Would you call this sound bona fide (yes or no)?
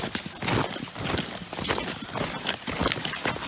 yes